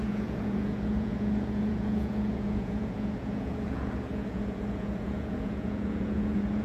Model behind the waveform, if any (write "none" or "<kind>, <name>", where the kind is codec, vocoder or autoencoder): vocoder, Vocos